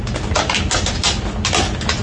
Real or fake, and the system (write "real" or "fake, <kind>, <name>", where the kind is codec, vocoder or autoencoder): real